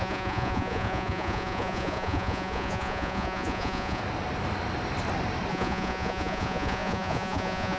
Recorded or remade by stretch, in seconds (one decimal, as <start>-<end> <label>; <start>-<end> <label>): 0.0-4.0 remade; 4.0-5.5 recorded; 5.5-7.8 remade